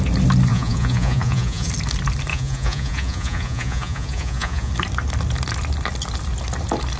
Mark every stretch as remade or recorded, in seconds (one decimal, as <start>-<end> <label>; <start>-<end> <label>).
0.0-0.5 recorded; 0.5-1.7 remade; 1.7-2.3 recorded; 2.3-4.7 remade; 4.7-7.0 recorded